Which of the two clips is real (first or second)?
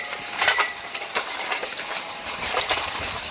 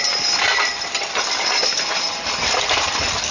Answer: second